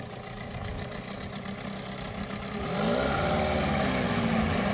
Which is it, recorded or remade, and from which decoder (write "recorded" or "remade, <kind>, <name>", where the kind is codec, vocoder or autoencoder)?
recorded